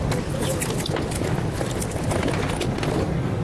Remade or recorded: recorded